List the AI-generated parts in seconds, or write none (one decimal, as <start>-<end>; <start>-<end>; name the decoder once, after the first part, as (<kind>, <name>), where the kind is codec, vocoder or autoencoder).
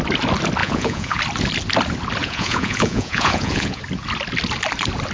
0.6-1.2 (vocoder, Vocos); 2.2-3.8